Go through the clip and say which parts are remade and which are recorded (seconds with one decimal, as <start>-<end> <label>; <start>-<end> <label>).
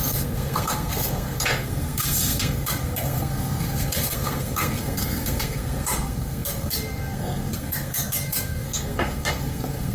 0.0-9.9 remade